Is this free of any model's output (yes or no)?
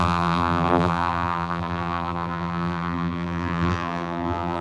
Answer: no